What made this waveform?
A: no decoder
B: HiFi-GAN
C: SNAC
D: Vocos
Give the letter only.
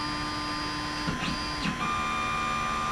A